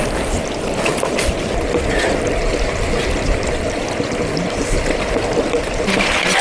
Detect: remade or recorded recorded